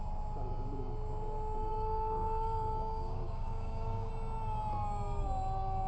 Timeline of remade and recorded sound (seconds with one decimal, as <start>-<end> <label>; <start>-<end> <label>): 0.0-1.7 recorded; 1.7-4.1 remade; 4.1-5.9 recorded